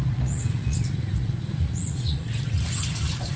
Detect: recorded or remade remade